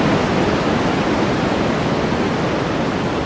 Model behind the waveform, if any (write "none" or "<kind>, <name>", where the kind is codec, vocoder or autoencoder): none